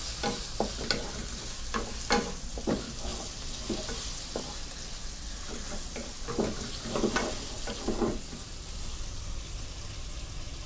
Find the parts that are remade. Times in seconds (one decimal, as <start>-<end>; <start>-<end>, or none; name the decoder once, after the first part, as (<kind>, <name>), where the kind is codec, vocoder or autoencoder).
none